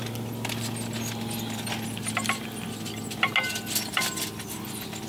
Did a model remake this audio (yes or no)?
no